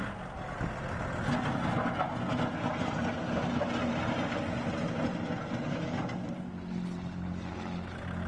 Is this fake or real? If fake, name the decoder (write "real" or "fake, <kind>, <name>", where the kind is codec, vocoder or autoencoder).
real